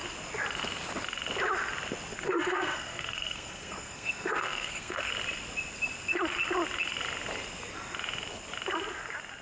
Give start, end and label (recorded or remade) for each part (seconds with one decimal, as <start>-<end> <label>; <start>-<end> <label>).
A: 0.0-2.1 recorded; 2.1-5.1 remade; 5.1-9.4 recorded